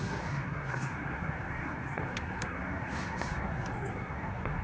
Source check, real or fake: fake